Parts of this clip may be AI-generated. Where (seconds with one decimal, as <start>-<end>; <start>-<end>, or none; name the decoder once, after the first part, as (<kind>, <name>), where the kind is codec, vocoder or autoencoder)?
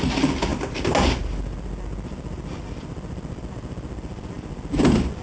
none